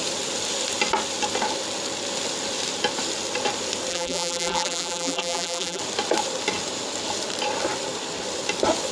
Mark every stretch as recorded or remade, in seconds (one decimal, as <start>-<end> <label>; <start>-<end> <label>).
0.0-3.9 recorded; 3.9-5.8 remade; 5.8-8.9 recorded